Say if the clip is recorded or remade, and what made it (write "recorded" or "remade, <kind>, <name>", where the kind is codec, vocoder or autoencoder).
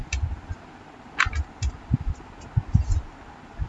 recorded